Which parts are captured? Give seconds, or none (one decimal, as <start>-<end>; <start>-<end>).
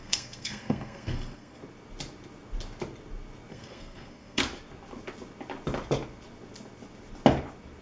1.6-3.5; 4.4-7.8